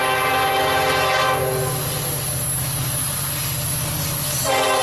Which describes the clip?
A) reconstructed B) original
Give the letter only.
B